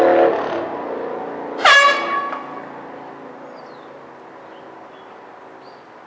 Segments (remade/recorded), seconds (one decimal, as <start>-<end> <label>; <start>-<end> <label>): 0.0-6.1 recorded